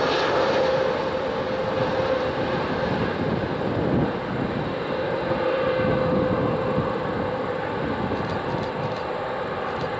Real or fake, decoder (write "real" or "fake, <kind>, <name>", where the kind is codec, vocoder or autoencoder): real